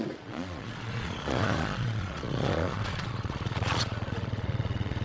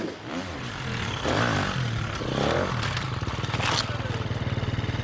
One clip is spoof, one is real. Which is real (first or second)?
second